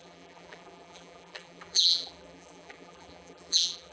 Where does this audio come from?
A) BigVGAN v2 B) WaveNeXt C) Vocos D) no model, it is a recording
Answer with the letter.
A